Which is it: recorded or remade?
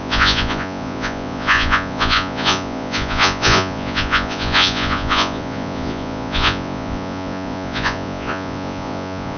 remade